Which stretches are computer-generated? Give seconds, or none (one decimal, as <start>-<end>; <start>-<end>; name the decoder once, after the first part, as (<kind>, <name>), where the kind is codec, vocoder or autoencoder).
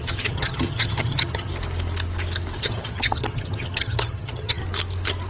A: 0.0-1.5 (vocoder, HiFi-GAN); 2.6-4.6